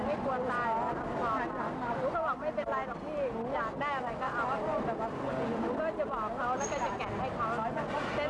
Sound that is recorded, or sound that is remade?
recorded